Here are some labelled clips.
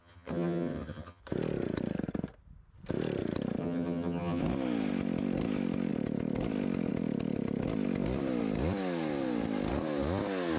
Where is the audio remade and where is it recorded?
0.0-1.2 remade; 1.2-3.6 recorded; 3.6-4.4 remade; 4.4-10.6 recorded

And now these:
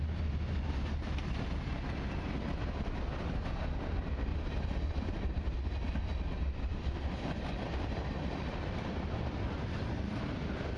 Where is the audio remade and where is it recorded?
0.0-4.3 recorded; 4.3-5.2 remade; 5.2-6.7 recorded; 6.7-10.8 remade

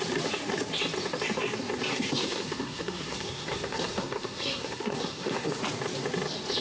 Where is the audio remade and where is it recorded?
0.0-1.9 recorded; 1.9-5.6 remade; 5.6-6.6 recorded

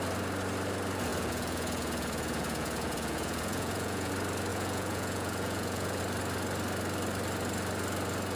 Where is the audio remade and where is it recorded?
0.0-1.1 recorded; 1.1-4.1 remade; 4.1-4.5 recorded; 4.5-6.0 remade; 6.0-8.4 recorded

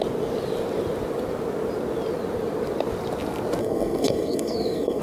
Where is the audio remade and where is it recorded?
0.0-3.6 recorded; 3.6-5.0 remade

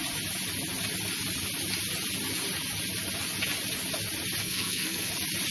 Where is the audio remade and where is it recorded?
0.0-4.4 recorded; 4.4-5.1 remade; 5.1-5.5 recorded

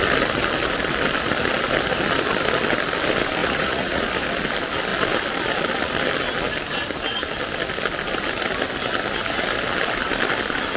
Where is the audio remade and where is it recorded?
0.0-3.4 recorded; 3.4-4.0 remade; 4.0-10.8 recorded

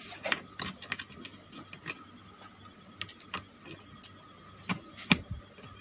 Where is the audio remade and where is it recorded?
0.0-5.8 recorded